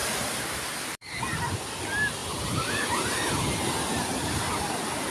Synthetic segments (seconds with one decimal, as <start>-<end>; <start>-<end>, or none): 0.0-1.2